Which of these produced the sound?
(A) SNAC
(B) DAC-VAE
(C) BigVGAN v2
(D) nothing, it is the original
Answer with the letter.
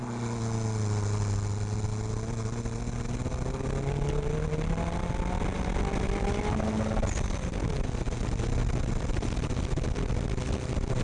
D